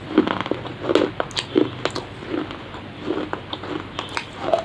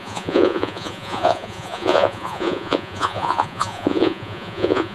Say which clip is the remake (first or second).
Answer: second